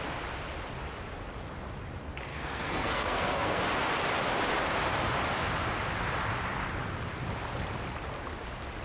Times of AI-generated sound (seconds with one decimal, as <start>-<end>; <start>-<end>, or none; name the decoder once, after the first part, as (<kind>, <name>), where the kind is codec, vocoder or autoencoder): 2.3-3.6 (codec, SNAC)